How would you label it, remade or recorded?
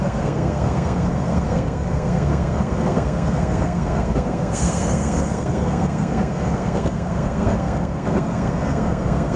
remade